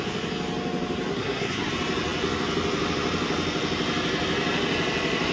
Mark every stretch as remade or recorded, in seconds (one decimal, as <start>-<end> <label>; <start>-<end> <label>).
0.0-1.1 recorded; 1.1-1.7 remade; 1.7-5.3 recorded